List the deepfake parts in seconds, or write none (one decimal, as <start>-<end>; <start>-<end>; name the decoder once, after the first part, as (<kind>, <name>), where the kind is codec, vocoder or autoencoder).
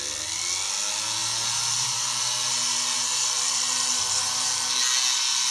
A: 1.2-4.5 (vocoder, BigVGAN v2)